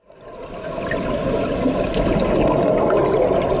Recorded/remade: recorded